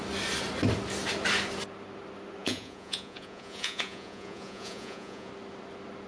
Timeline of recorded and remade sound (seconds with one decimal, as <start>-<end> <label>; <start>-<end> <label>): 0.0-2.4 recorded; 2.4-5.3 remade; 5.3-6.1 recorded